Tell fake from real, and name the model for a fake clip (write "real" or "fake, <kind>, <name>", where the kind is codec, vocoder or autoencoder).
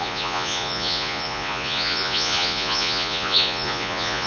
fake, vocoder, Vocos